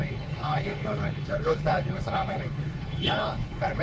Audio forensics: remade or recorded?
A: remade